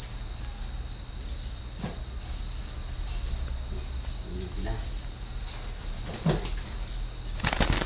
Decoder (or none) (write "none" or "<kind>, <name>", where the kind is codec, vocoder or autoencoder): none